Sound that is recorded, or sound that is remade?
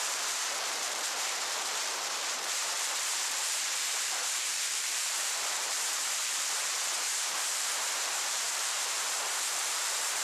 remade